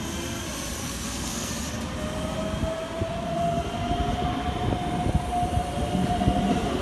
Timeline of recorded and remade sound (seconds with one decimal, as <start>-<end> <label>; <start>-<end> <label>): 0.0-0.8 recorded; 0.8-1.5 remade; 1.5-6.8 recorded